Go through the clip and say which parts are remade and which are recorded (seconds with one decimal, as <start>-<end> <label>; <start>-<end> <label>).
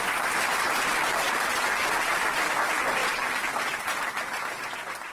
0.0-5.1 recorded